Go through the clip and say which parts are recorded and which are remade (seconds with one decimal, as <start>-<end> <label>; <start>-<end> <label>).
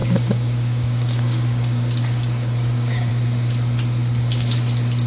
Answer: 0.0-3.1 remade; 3.1-5.1 recorded